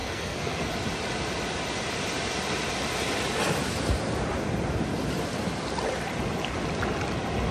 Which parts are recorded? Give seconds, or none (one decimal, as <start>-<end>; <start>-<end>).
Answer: 0.7-7.5